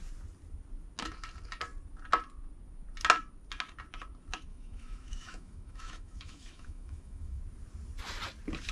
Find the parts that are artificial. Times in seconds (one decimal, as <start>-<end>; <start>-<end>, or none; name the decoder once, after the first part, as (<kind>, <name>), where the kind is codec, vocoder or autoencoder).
4.5-7.4 (autoencoder, DAC-VAE)